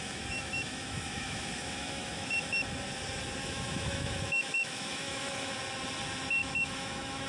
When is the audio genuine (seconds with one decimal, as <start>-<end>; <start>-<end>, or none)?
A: 2.3-3.4; 5.5-6.4